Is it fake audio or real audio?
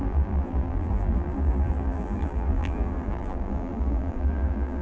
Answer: fake